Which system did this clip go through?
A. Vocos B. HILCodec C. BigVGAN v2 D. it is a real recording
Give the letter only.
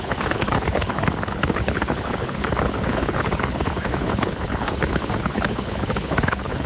B